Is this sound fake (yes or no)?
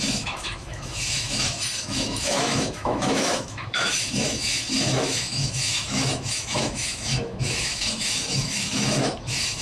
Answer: yes